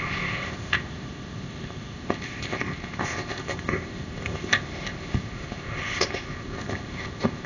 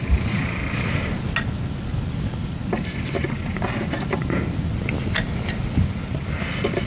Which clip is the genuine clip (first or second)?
second